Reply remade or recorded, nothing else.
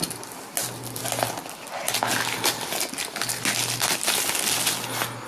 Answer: recorded